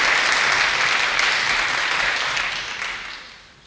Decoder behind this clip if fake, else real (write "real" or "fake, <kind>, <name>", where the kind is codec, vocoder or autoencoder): real